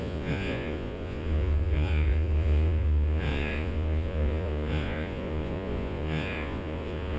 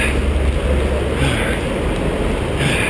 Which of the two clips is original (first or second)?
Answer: second